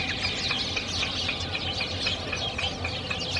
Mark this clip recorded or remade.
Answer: recorded